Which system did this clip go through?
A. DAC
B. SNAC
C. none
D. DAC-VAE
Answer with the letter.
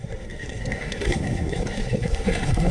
B